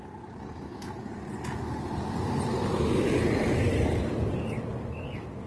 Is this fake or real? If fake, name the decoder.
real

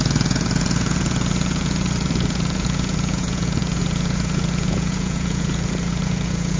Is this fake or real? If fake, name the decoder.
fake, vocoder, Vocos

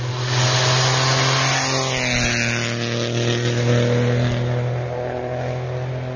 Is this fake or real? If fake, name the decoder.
real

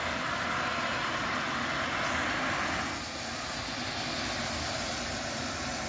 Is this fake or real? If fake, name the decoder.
real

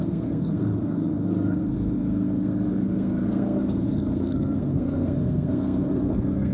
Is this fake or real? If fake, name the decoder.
fake, codec, SNAC